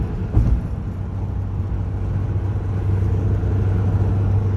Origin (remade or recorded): recorded